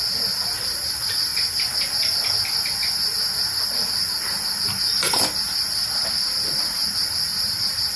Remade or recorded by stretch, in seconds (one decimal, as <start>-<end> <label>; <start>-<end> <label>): 0.0-8.0 recorded